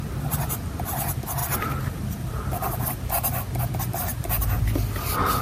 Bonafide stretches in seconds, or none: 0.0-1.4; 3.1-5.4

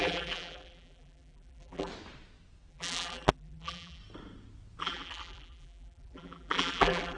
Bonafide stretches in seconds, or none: 1.9-2.7; 4.0-4.8

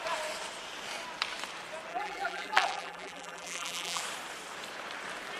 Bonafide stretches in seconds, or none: 0.0-1.9; 4.0-5.4